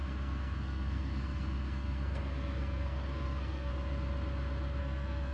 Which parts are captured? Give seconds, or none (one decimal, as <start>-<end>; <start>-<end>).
3.7-4.8